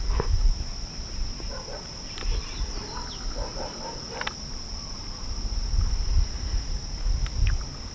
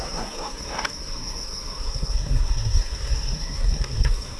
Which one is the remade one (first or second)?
second